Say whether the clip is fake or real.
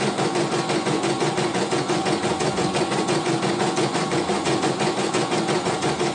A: fake